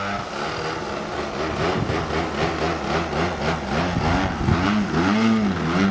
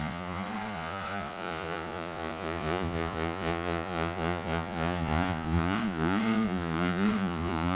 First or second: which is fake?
second